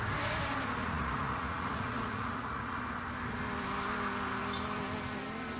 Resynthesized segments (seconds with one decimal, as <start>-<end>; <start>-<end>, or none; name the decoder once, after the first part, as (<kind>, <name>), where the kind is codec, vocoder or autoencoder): 0.8-2.8 (vocoder, Vocos)